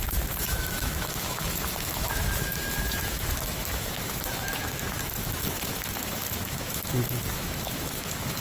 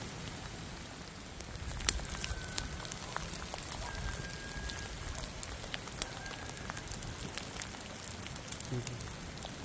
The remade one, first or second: first